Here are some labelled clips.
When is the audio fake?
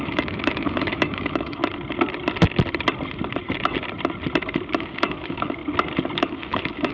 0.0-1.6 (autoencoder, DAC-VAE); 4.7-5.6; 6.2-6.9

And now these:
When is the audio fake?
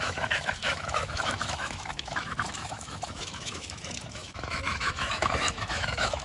0.0-6.2 (autoencoder, DAC-VAE)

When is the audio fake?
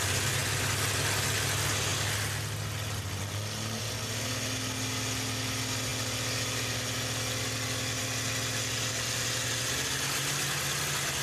none